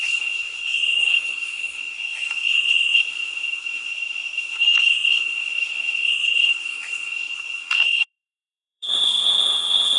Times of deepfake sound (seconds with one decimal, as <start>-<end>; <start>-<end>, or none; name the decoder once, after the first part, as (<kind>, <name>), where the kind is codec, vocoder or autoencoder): 0.0-10.0 (codec, SNAC)